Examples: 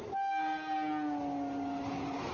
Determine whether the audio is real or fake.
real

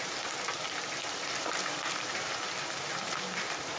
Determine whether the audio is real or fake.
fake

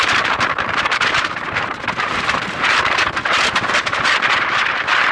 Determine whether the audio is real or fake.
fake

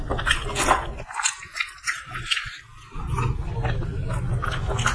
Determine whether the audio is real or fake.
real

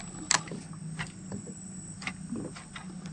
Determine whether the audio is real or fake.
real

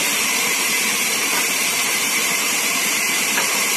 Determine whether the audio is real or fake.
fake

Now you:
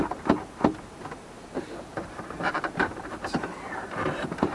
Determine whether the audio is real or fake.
fake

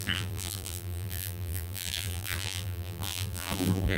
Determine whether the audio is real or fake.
fake